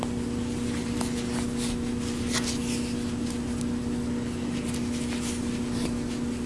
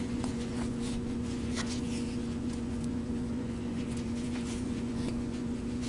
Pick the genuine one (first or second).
first